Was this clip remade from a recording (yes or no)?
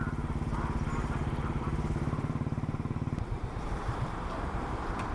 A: yes